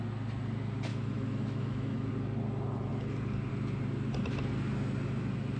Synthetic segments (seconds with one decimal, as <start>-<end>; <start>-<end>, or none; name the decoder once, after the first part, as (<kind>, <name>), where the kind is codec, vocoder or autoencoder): 0.9-2.1 (autoencoder, DAC-VAE)